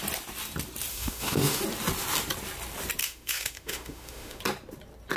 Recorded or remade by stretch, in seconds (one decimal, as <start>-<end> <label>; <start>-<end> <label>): 0.0-0.9 recorded; 0.9-1.6 remade; 1.6-3.0 recorded; 3.0-4.4 remade; 4.4-5.2 recorded